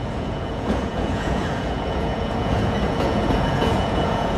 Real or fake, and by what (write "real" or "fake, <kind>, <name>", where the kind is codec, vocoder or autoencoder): fake, vocoder, Vocos